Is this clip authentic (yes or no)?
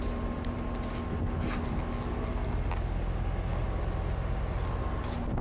yes